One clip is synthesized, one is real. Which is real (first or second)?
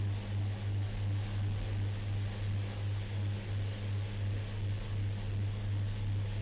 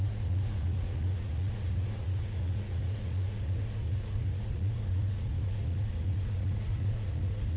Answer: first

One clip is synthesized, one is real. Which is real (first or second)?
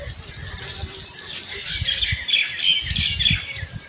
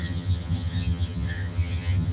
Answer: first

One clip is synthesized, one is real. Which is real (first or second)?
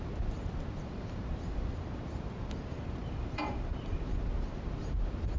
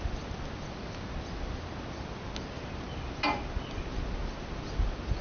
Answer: second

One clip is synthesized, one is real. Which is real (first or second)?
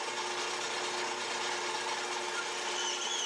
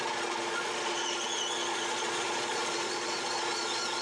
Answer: first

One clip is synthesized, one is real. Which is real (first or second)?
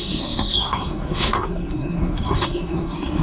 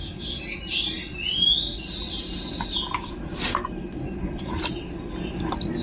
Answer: second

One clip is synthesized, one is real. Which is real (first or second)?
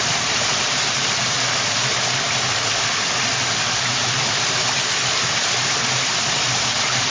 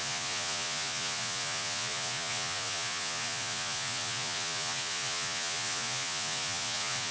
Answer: first